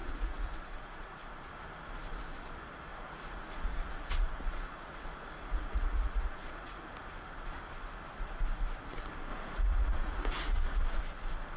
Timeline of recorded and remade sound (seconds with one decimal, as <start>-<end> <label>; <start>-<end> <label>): 0.0-1.5 remade; 1.5-2.9 recorded; 2.9-6.8 remade; 6.8-9.3 recorded; 9.3-11.0 remade; 11.0-11.6 recorded